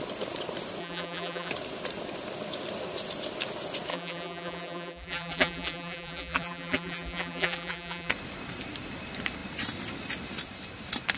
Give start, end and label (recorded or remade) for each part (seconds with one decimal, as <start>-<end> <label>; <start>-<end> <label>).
0.0-0.8 recorded; 0.8-1.5 remade; 1.5-3.9 recorded; 3.9-8.1 remade; 8.1-11.2 recorded